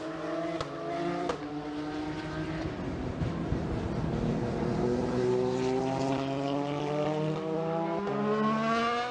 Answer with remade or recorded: recorded